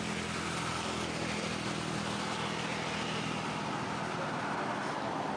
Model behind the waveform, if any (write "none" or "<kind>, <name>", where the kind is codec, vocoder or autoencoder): none